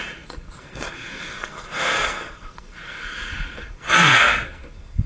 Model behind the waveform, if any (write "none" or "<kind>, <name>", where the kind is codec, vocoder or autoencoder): codec, SNAC